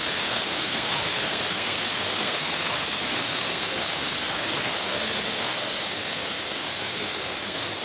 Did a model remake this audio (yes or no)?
yes